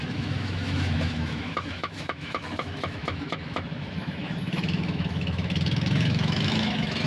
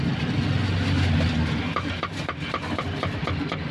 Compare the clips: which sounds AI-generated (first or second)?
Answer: first